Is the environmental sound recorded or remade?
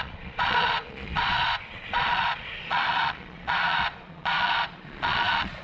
remade